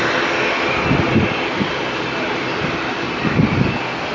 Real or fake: real